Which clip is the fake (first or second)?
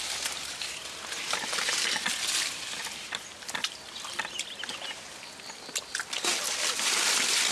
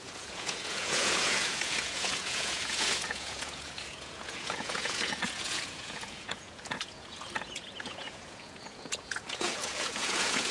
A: second